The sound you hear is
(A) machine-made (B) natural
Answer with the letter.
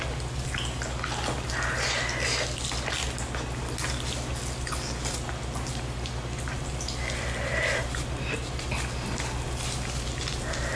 B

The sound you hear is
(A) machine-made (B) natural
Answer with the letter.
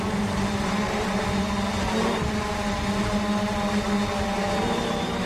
A